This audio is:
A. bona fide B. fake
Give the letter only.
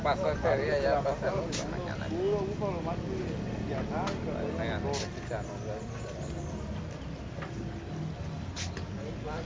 A